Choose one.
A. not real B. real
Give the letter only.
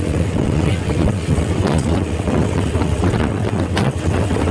A